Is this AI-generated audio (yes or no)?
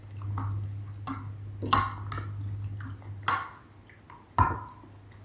no